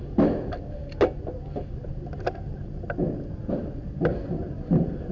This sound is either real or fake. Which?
real